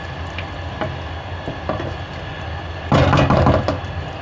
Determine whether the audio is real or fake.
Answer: real